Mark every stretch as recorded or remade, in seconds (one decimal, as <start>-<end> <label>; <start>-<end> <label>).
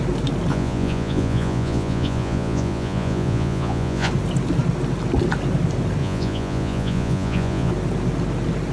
0.0-0.5 recorded; 0.5-4.1 remade; 4.1-6.0 recorded; 6.0-7.7 remade; 7.7-8.7 recorded